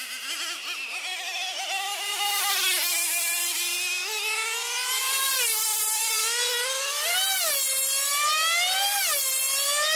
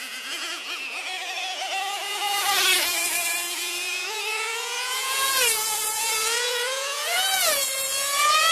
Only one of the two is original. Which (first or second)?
first